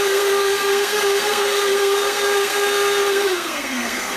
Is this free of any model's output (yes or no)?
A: no